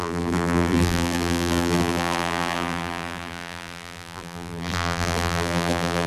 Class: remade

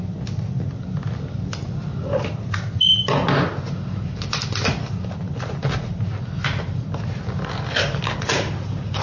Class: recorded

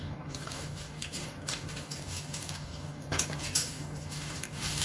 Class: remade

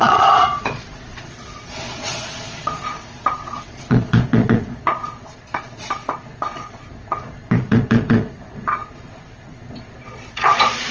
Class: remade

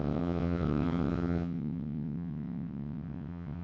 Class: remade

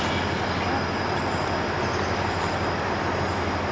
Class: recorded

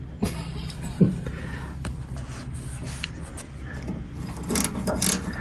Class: recorded